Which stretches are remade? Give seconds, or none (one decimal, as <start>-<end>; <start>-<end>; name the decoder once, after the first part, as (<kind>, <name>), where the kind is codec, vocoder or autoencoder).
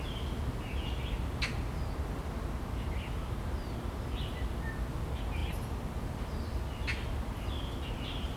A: none